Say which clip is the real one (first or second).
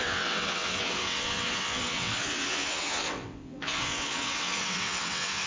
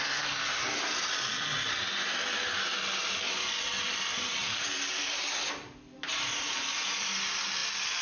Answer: second